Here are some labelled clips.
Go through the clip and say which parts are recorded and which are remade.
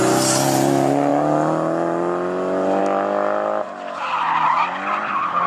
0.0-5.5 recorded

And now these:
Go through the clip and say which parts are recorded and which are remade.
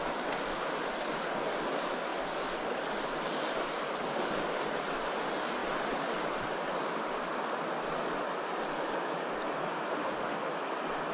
0.0-9.9 recorded; 9.9-10.5 remade; 10.5-11.1 recorded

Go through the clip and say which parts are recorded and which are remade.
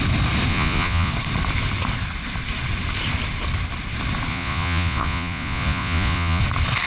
0.0-0.5 recorded; 0.5-1.1 remade; 1.1-4.3 recorded; 4.3-6.4 remade; 6.4-6.9 recorded